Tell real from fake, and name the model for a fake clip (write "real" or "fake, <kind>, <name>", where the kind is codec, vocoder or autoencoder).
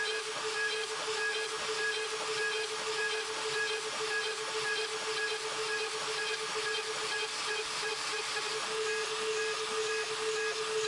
real